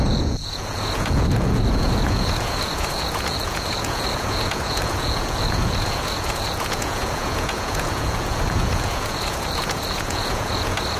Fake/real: fake